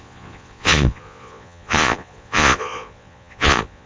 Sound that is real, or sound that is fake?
fake